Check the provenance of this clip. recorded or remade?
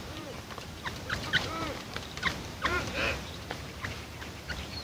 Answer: remade